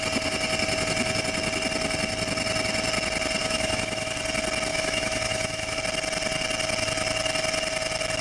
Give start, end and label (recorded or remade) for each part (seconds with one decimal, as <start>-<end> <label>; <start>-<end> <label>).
0.0-3.4 recorded; 3.4-4.2 remade; 4.2-4.7 recorded; 4.7-5.8 remade; 5.8-8.2 recorded